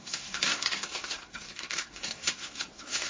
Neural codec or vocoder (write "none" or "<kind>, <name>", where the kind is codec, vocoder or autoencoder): codec, SNAC